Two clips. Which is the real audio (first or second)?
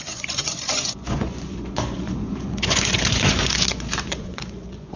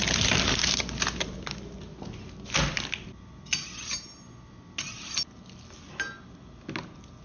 second